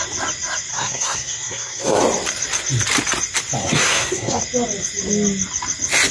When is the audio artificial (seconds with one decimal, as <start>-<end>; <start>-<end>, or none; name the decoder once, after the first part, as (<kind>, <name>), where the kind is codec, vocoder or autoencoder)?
0.7-2.0 (codec, SNAC); 3.6-4.4